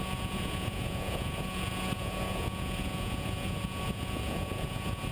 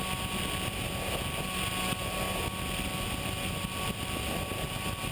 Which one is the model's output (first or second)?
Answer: first